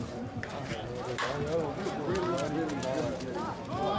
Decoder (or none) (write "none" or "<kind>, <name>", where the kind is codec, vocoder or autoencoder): none